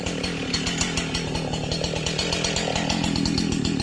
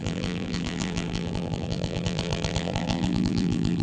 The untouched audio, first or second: first